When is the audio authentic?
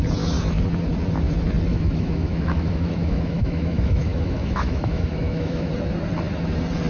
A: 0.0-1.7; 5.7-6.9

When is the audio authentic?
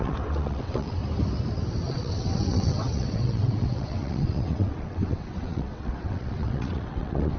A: 1.0-1.9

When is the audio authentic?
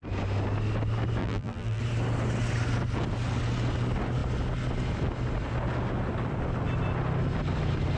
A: 0.0-1.2; 1.8-8.0